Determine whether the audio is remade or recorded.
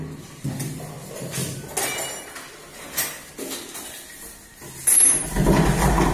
recorded